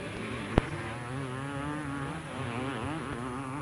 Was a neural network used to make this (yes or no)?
no